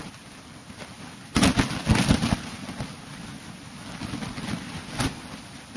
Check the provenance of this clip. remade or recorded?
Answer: recorded